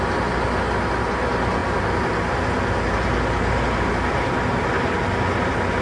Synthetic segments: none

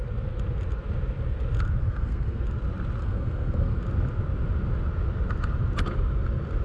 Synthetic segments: 1.8-2.4 (codec, SNAC); 3.0-3.8

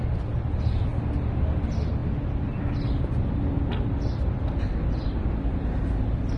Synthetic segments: none

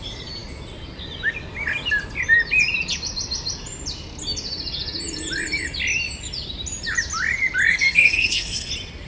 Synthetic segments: 7.7-8.7 (codec, SNAC)

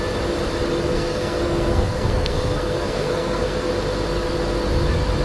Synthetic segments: 0.9-3.7 (codec, SNAC)

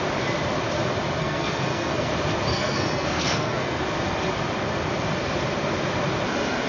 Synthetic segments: 1.2-2.1 (codec, SNAC); 2.5-3.8